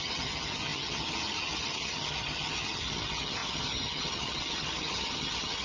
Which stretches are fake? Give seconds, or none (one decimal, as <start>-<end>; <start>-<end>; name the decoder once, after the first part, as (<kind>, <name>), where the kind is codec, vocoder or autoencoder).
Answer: 0.0-5.6 (vocoder, HiFi-GAN)